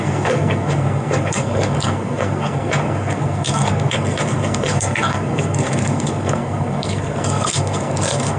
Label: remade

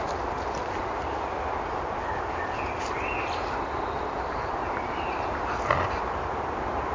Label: recorded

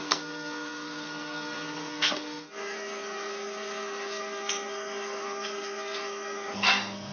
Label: remade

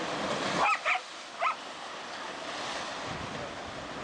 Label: recorded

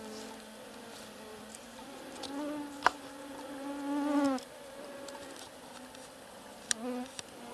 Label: recorded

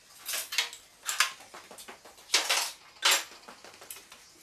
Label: recorded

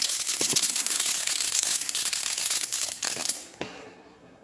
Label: remade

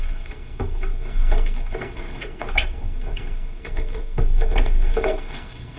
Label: remade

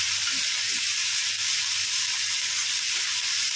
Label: recorded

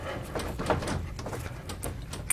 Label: recorded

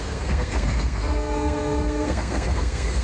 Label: remade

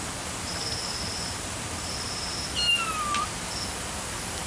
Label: recorded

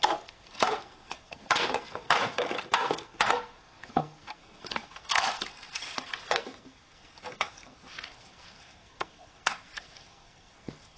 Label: remade